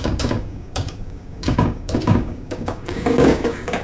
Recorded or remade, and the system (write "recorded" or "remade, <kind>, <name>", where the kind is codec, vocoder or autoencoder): remade, codec, DAC